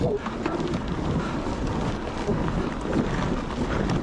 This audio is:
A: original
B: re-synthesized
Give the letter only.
A